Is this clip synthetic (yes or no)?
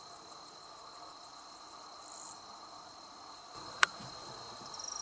no